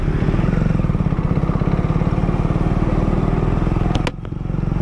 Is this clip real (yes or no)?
yes